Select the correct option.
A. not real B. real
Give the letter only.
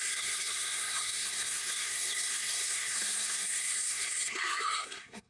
A